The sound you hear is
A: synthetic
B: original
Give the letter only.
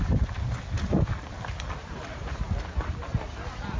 A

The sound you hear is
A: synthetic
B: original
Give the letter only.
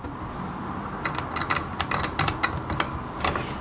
B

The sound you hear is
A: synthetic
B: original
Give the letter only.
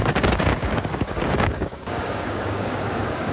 A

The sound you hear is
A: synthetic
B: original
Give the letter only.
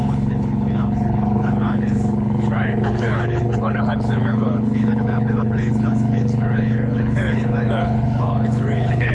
A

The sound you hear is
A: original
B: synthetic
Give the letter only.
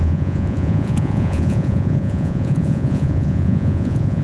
B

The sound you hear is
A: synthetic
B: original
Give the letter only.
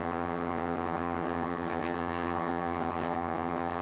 A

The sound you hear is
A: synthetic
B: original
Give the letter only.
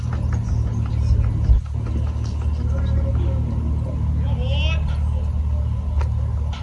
B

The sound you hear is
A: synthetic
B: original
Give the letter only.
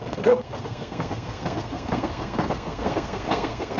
A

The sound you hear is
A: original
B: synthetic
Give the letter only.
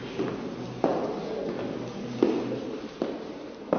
A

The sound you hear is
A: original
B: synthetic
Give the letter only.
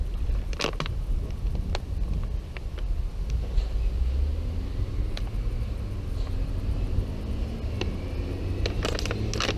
A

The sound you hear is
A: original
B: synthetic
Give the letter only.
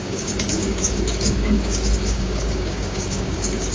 B